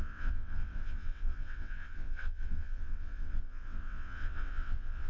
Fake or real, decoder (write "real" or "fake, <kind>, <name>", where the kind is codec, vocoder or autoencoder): fake, vocoder, WaveNeXt